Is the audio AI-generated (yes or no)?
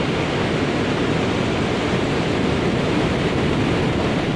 no